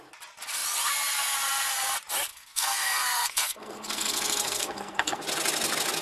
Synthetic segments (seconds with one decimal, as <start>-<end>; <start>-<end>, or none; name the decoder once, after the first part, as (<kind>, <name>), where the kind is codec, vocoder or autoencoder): 2.3-5.2 (codec, SNAC)